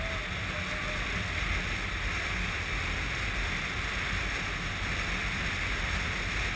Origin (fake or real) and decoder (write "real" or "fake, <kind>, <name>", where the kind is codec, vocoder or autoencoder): real